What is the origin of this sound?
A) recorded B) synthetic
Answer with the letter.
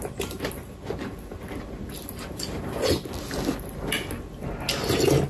A